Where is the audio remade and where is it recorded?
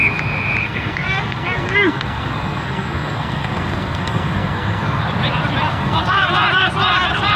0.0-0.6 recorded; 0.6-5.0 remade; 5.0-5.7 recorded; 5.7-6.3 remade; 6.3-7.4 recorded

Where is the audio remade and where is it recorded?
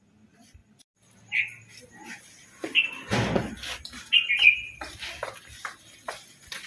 0.0-6.7 recorded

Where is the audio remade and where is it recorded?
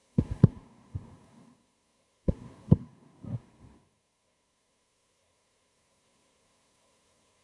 0.0-7.4 remade